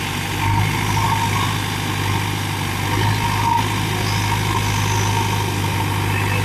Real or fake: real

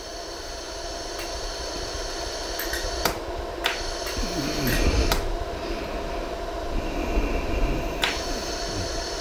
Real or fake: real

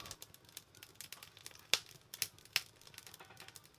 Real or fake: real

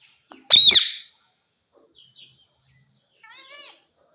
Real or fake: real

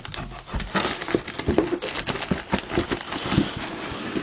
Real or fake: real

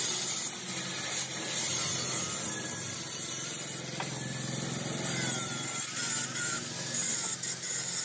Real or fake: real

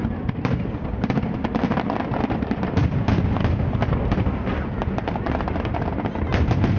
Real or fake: real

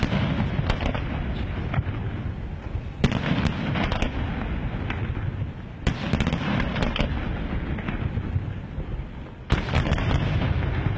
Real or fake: real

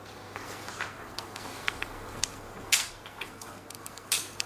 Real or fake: fake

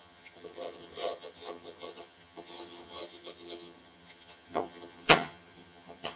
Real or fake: fake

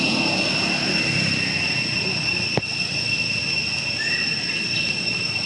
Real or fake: real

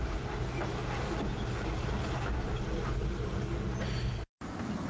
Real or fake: real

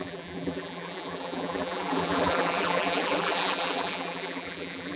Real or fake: fake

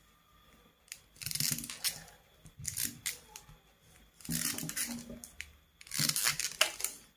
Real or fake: real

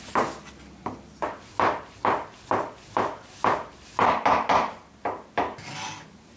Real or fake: real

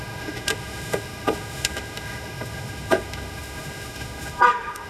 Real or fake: fake